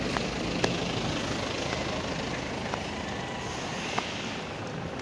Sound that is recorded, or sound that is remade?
recorded